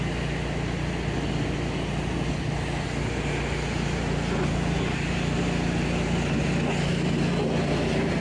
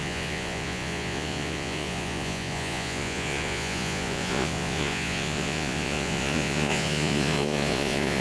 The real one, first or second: first